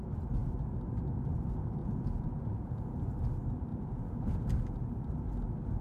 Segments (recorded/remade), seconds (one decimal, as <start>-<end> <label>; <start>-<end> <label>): 0.0-1.8 recorded; 1.8-3.0 remade; 3.0-3.7 recorded; 3.7-4.5 remade; 4.5-5.8 recorded